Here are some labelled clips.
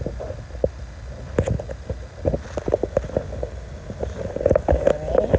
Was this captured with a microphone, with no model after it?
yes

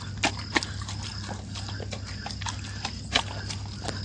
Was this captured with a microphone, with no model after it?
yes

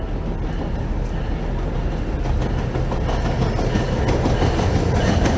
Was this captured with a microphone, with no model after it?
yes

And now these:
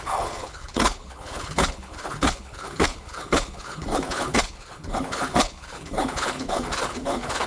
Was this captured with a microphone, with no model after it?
no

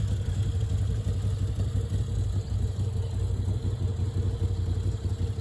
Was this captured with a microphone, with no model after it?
yes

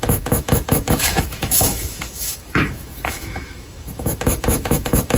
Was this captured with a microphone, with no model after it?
no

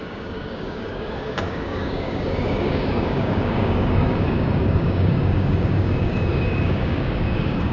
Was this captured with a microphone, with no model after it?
no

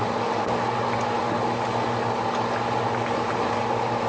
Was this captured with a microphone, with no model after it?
yes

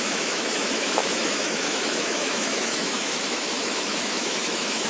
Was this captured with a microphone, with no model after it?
no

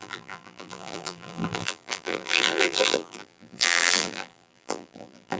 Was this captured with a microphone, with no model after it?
no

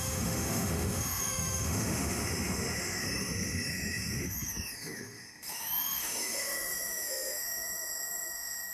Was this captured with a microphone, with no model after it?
no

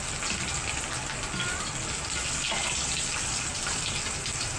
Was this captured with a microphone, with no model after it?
yes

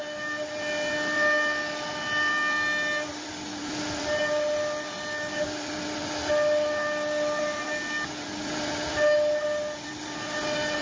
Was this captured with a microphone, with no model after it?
yes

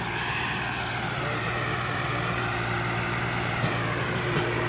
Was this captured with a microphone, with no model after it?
no